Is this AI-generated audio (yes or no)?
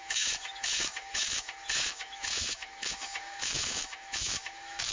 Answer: yes